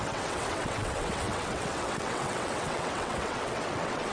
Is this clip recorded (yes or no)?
no